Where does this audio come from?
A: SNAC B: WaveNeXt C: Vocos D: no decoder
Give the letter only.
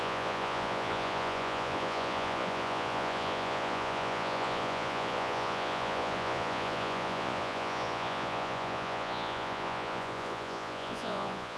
C